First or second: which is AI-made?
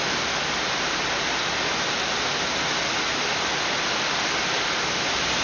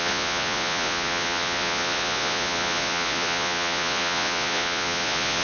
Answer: second